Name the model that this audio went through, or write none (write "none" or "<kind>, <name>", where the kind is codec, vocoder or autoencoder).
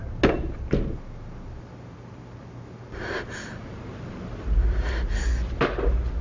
none